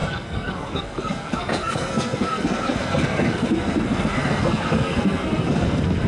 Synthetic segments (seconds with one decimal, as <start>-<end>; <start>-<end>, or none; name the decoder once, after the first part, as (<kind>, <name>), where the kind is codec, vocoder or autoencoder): 0.0-6.1 (codec, SNAC)